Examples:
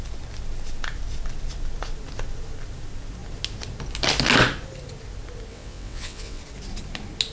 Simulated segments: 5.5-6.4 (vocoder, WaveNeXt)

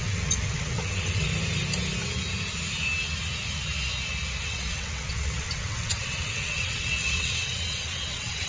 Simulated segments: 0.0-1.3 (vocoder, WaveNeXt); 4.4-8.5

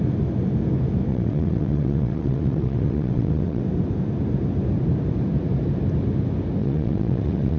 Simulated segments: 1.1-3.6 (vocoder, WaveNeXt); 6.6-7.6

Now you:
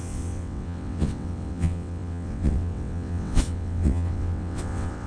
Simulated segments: 0.0-5.1 (vocoder, WaveNeXt)